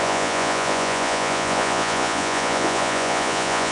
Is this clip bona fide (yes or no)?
no